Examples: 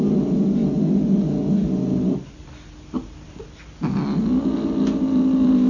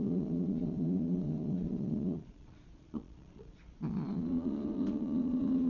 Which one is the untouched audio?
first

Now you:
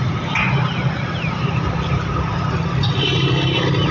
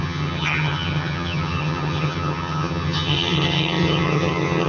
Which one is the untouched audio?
first